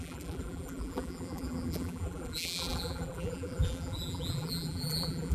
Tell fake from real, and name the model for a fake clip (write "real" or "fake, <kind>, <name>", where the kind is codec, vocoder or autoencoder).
fake, vocoder, BigVGAN v2